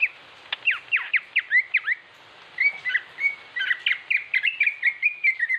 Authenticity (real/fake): real